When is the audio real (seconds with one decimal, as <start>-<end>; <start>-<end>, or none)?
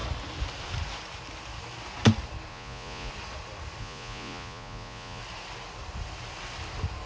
0.0-2.5; 3.1-3.8; 5.2-7.1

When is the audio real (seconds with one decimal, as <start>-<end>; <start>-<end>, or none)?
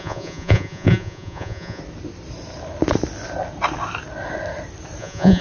1.8-5.0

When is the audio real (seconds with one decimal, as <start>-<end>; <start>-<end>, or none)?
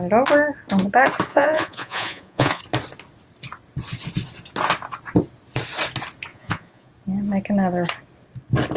0.0-1.3; 2.6-6.3; 6.9-8.8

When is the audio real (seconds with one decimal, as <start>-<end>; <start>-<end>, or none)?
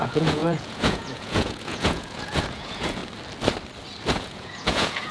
3.0-4.2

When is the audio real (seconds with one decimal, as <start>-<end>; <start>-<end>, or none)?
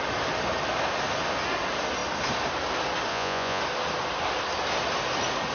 0.0-3.1; 3.6-5.5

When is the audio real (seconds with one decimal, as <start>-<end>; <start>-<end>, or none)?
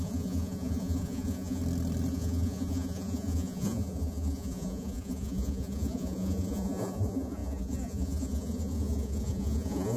1.6-2.1